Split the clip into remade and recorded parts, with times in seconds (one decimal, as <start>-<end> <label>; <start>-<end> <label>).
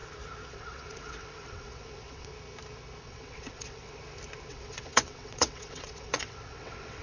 0.0-0.5 recorded; 0.5-2.3 remade; 2.3-3.0 recorded; 3.0-4.0 remade; 4.0-4.5 recorded; 4.5-7.0 remade